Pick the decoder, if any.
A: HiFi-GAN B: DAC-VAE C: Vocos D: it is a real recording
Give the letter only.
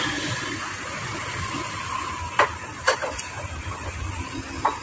D